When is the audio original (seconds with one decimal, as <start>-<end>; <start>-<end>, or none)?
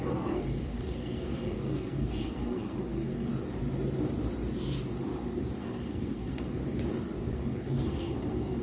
3.3-5.6; 6.6-7.3